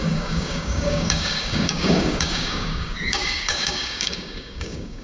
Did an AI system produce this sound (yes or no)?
yes